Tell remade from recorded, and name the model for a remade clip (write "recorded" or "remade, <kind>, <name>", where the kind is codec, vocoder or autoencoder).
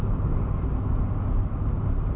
recorded